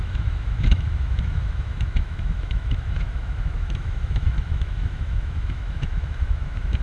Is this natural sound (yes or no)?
no